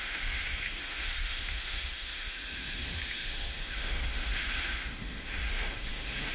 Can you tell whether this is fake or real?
fake